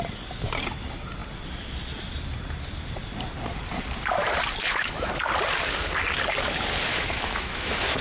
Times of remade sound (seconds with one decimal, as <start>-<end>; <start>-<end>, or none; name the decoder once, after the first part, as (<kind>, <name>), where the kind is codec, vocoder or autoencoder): 4.6-5.1 (autoencoder, DAC-VAE); 6.9-8.0